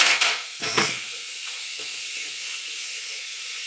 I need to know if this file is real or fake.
fake